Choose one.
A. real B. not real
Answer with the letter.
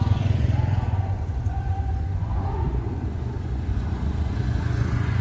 B